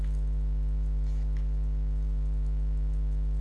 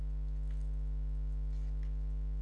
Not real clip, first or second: first